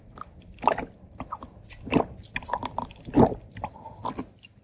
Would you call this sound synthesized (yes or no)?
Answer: no